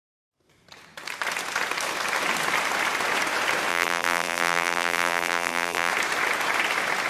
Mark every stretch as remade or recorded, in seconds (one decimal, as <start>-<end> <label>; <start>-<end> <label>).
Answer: 0.0-3.7 recorded; 3.7-5.9 remade; 5.9-7.1 recorded

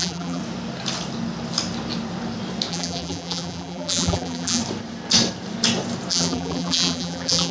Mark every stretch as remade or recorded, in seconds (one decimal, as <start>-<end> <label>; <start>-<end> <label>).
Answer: 0.0-0.4 remade; 0.4-2.7 recorded; 2.7-4.6 remade; 4.6-6.1 recorded; 6.1-7.5 remade